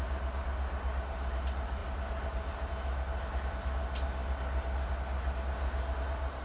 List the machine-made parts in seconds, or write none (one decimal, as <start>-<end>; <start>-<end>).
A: none